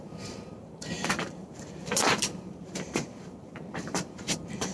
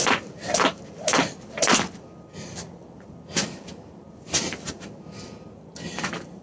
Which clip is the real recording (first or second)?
second